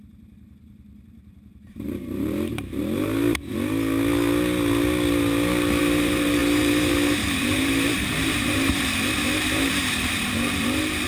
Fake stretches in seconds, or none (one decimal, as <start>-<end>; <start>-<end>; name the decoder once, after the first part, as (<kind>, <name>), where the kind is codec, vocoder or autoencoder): 0.0-3.5 (vocoder, BigVGAN v2); 5.8-11.1